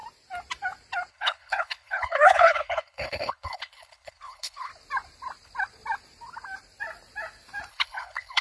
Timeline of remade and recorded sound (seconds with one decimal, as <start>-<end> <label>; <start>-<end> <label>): 0.0-1.1 recorded; 1.1-4.7 remade; 4.7-7.7 recorded; 7.7-8.4 remade

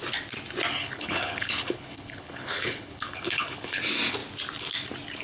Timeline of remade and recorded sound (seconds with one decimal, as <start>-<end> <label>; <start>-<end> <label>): 0.0-0.8 recorded; 0.8-3.8 remade; 3.8-5.2 recorded

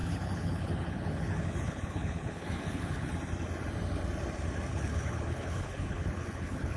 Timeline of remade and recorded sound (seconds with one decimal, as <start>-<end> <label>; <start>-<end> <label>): 0.0-3.1 remade; 3.1-4.7 recorded; 4.7-6.8 remade

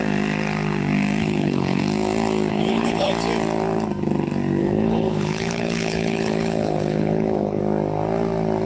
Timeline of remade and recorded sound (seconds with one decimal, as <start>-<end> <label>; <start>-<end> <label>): 0.0-1.2 recorded; 1.2-1.8 remade; 1.8-2.5 recorded; 2.5-3.1 remade; 3.1-4.6 recorded; 4.6-7.6 remade; 7.6-8.7 recorded

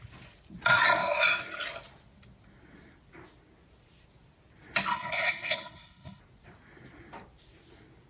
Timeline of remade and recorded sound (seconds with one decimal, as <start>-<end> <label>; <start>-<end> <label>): 0.0-4.9 recorded; 4.9-6.2 remade; 6.2-8.1 recorded

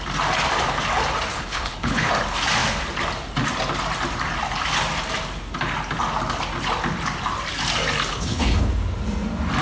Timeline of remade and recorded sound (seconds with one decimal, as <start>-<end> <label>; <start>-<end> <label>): 0.0-1.3 recorded; 1.3-2.1 remade; 2.1-8.1 recorded; 8.1-8.7 remade; 8.7-9.6 recorded

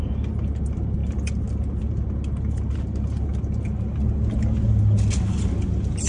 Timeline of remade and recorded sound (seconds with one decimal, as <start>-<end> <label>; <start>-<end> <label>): 0.0-6.1 recorded